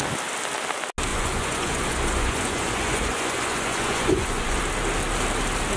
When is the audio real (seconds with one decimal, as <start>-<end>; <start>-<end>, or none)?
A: 0.0-1.1; 4.6-5.8